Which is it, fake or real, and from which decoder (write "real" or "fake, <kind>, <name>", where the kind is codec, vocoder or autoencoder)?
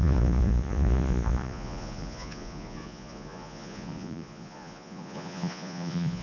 fake, vocoder, Vocos